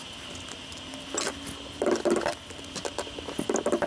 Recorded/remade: recorded